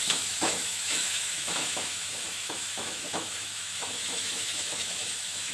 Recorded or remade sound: remade